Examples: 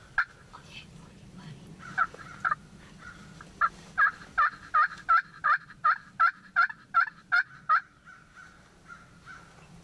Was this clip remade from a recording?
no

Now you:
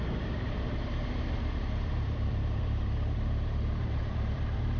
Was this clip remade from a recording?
yes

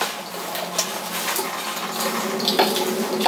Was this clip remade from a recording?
no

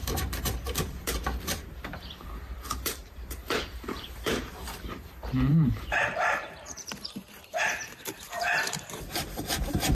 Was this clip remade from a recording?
yes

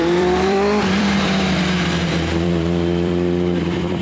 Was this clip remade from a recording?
yes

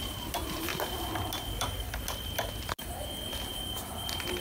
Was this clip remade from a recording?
yes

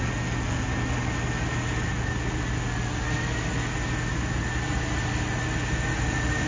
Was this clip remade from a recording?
no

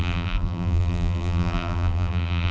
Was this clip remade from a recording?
yes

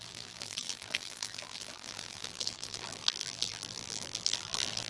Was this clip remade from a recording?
yes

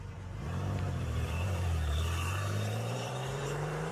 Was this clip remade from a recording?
yes